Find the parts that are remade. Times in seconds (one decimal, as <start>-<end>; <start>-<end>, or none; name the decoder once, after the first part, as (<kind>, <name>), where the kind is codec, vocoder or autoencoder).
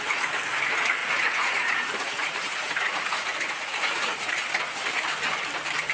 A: 1.0-4.5 (vocoder, Vocos)